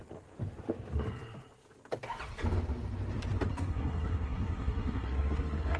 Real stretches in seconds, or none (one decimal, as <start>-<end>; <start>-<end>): 0.0-3.5